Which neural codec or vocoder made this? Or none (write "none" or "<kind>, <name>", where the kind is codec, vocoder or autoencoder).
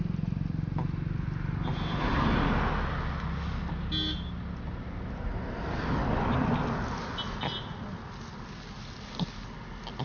none